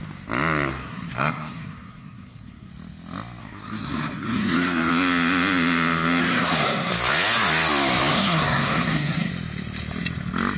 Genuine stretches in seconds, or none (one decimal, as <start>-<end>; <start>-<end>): 0.0-0.7; 2.7-3.4; 4.9-6.2; 6.9-8.1; 9.3-10.6

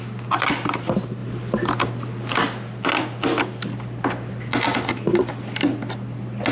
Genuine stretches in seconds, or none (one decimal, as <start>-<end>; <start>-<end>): 0.0-6.5

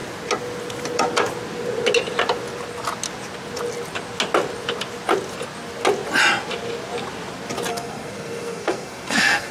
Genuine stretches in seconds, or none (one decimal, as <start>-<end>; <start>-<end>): 0.0-7.7

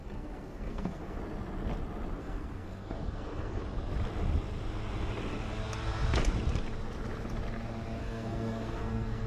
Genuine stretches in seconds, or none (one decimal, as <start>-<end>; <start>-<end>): 1.2-2.2; 3.6-8.0

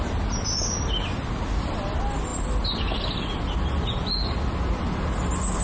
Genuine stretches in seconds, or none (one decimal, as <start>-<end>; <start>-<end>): 0.0-5.6

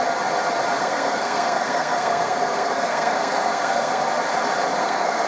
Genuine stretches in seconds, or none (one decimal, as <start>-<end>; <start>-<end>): 0.0-0.8; 4.0-4.8

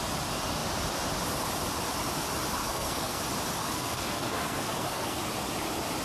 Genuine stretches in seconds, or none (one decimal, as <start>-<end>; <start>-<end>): 0.0-2.6; 3.2-3.6; 5.2-6.0

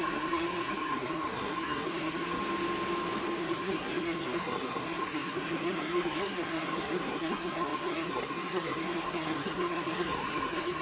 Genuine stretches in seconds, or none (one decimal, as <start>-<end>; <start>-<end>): 2.4-3.4